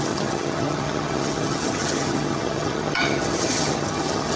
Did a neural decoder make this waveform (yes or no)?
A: yes